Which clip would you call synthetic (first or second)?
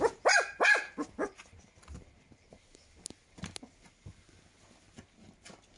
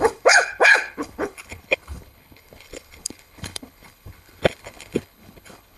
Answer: second